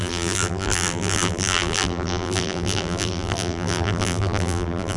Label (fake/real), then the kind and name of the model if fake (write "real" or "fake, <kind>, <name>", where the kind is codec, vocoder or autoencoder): fake, vocoder, BigVGAN v2